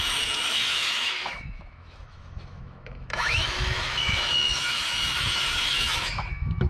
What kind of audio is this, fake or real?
fake